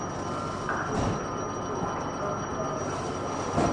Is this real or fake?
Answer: real